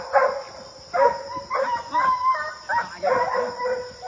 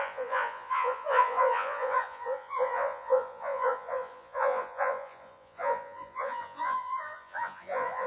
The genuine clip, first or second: first